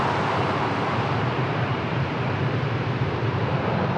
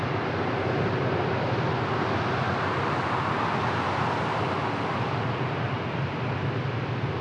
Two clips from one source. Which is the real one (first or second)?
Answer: second